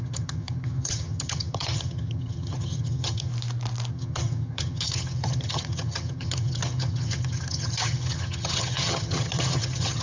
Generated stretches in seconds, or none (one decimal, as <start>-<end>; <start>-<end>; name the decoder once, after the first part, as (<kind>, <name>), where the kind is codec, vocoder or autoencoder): 0.0-3.3 (vocoder, HiFi-GAN); 3.9-10.0